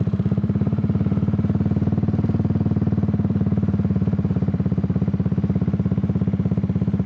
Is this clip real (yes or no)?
no